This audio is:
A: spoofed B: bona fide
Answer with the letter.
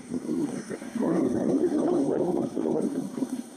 A